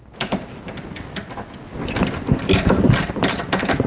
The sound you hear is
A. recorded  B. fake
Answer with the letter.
A